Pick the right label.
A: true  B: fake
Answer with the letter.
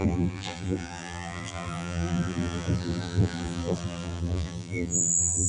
B